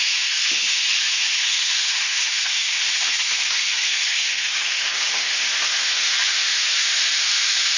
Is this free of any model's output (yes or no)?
no